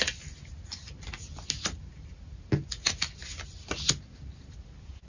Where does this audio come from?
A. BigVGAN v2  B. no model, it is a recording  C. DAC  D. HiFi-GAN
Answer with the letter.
B